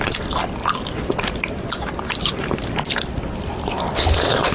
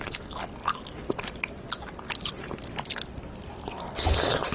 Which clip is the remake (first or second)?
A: first